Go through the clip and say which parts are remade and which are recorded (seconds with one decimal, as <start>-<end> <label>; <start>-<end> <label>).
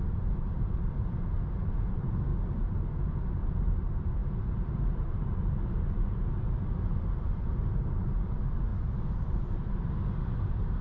0.0-2.3 remade; 2.3-2.8 recorded; 2.8-10.8 remade